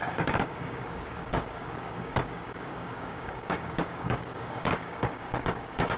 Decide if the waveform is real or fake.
fake